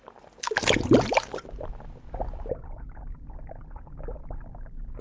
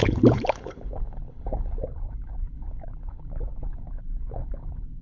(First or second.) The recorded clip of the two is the first